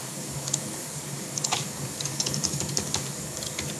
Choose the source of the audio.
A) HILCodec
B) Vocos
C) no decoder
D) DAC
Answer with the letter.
D